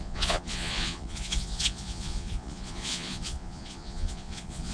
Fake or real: fake